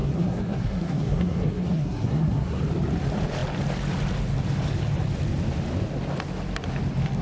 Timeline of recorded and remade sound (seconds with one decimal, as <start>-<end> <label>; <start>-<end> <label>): 0.0-2.6 remade; 2.6-7.2 recorded